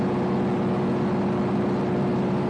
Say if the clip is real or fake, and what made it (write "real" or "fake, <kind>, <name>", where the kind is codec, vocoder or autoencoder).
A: real